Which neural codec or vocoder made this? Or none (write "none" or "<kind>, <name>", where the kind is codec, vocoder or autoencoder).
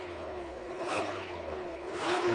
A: codec, HILCodec